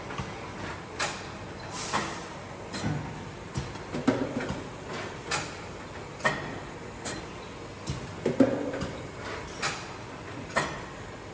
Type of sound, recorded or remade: recorded